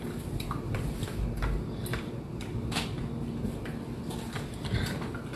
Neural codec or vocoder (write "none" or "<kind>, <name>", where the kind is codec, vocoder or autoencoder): none